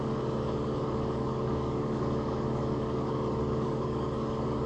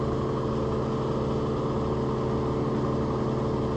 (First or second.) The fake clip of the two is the first